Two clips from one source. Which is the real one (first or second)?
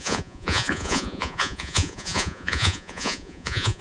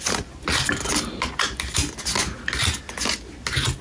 second